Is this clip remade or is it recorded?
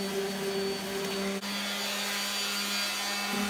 recorded